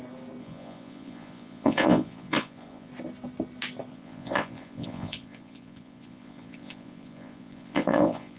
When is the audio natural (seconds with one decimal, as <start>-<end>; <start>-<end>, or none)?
0.0-0.4; 2.9-3.9